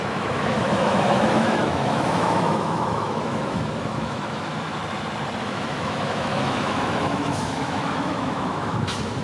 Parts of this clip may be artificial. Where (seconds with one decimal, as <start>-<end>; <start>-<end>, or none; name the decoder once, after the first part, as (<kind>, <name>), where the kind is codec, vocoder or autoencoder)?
0.0-4.8 (autoencoder, DAC-VAE); 5.4-9.2